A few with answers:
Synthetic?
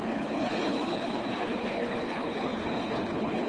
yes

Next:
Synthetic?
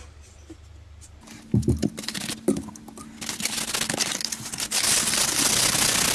no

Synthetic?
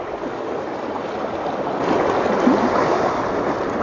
no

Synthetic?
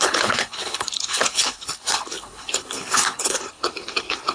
yes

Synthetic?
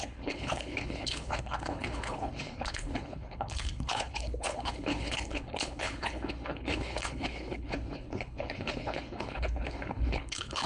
yes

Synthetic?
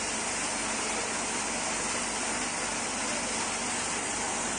no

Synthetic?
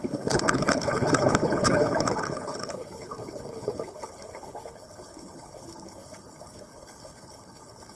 yes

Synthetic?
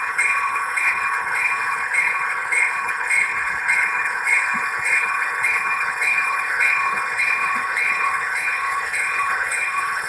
yes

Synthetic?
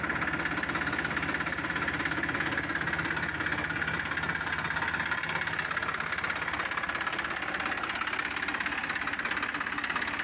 no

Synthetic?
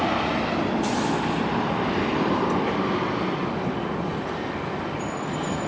no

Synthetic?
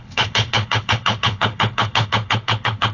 yes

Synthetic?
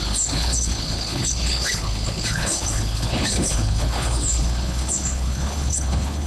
yes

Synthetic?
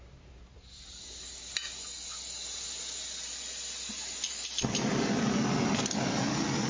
no